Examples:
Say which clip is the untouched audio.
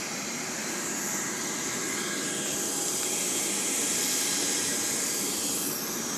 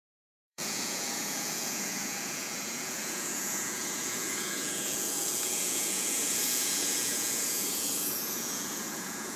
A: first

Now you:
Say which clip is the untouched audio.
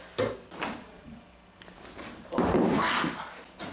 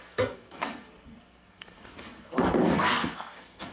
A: first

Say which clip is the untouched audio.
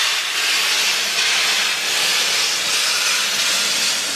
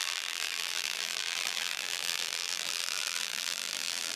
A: first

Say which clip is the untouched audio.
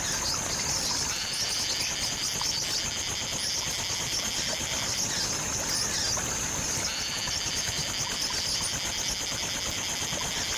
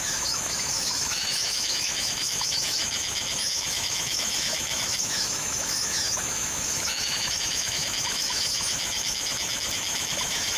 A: first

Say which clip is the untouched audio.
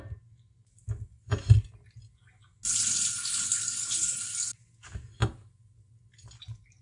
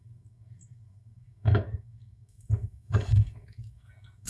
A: first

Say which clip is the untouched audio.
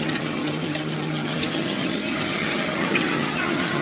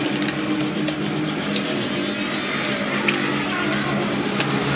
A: second